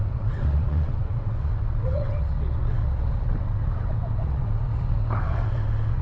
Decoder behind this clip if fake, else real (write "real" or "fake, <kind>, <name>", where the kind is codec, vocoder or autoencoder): fake, vocoder, WaveNeXt